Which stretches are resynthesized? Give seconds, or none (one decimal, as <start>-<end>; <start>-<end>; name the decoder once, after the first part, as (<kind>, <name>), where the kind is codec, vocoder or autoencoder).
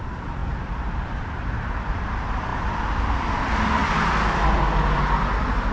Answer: 0.0-3.8 (vocoder, BigVGAN v2)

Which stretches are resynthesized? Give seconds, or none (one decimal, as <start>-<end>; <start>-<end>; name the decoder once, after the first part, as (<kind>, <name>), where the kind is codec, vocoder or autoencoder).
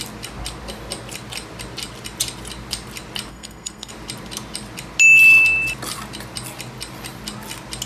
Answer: 3.3-3.9 (codec, SNAC)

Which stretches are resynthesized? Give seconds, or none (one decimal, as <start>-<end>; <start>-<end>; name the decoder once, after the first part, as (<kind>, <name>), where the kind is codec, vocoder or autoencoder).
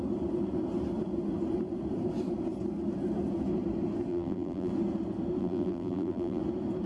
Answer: 4.1-4.7 (vocoder, BigVGAN v2); 5.4-6.4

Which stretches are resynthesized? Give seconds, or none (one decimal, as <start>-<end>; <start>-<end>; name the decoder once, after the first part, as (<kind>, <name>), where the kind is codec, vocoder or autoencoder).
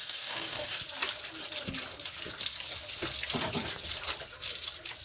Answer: 0.0-0.8 (codec, DAC)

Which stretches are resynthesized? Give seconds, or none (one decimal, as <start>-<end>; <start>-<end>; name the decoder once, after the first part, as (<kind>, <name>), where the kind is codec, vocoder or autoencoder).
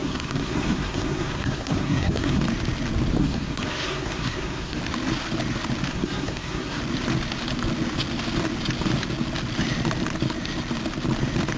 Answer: 0.0-2.4 (codec, SNAC); 3.2-4.8; 5.9-6.8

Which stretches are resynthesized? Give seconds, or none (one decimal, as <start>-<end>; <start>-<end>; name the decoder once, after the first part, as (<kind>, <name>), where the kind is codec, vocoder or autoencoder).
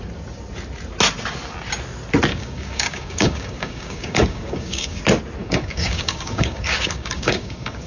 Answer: 2.3-5.0 (codec, DAC); 5.4-7.9